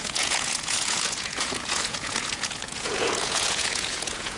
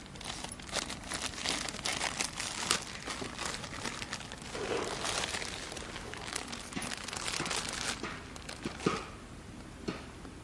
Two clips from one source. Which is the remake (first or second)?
first